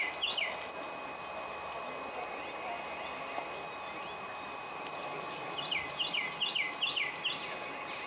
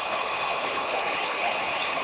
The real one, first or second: first